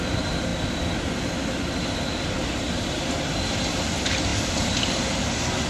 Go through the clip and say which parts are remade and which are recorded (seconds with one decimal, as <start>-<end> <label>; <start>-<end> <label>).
0.0-5.7 remade